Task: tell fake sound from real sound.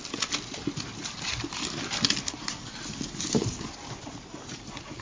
real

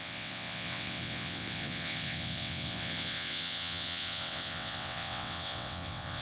fake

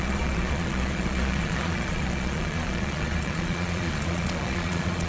fake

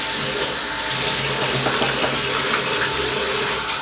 real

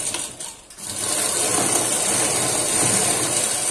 real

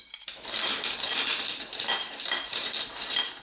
fake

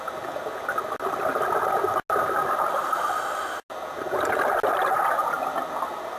real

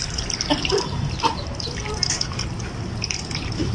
real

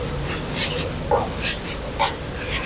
real